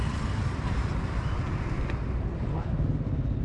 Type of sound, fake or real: real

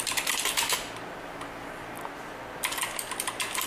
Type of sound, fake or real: real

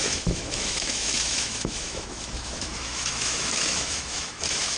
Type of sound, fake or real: fake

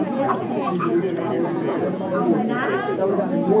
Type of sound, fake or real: fake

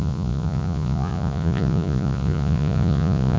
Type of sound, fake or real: fake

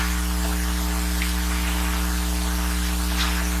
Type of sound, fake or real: real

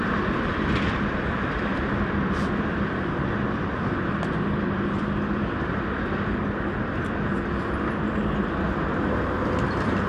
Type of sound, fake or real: fake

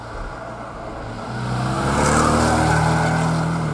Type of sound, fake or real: real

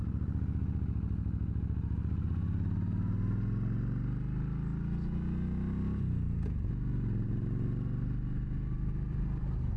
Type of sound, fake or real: real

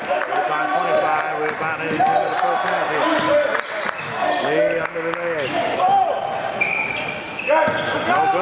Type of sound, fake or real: real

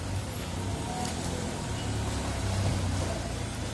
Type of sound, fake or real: real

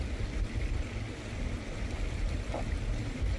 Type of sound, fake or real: real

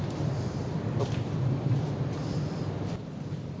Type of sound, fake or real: fake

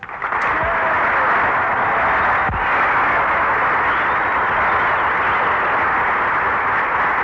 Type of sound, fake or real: real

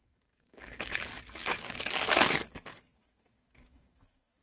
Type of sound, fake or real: fake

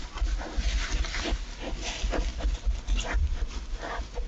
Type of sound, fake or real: real